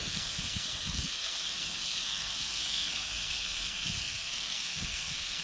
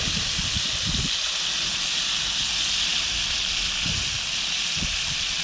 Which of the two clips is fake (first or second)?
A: first